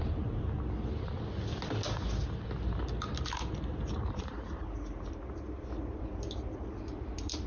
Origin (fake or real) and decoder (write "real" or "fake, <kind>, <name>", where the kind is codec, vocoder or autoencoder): real